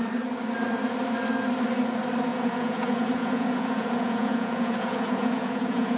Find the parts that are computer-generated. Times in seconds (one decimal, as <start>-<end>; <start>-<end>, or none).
2.3-6.0